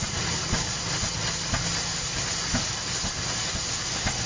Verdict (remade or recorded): recorded